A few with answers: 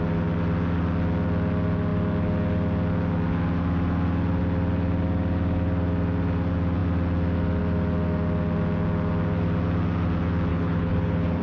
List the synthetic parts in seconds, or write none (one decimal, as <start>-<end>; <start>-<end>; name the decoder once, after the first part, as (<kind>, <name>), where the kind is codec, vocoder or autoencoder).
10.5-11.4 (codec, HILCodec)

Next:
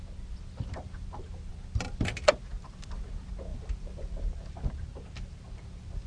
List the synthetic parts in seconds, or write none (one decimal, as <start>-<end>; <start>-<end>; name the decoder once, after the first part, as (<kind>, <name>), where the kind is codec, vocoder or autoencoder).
none

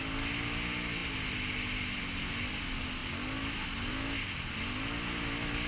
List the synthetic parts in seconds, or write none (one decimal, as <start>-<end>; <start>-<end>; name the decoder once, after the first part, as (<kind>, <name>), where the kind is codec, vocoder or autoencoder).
none

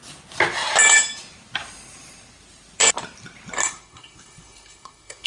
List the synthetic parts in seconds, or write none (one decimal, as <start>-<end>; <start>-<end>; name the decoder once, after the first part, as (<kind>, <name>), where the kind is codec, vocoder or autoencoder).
3.6-5.3 (codec, SNAC)

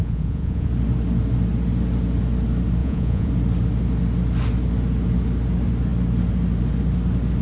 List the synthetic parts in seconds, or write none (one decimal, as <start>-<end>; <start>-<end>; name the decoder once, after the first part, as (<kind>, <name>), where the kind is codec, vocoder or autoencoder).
0.0-0.7 (vocoder, Vocos); 2.8-3.3

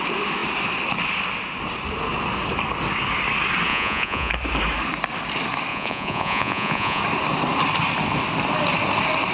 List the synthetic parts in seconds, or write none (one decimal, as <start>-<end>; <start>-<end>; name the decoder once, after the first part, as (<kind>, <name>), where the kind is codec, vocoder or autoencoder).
3.7-4.3 (vocoder, Vocos); 5.7-7.0

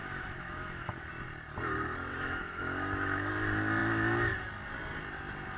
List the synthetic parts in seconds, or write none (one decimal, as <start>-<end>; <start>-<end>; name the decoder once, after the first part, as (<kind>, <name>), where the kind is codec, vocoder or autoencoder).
0.0-1.1 (autoencoder, DAC-VAE); 2.1-3.3